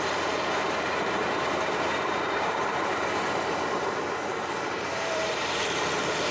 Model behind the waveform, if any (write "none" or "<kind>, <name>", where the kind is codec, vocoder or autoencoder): vocoder, BigVGAN v2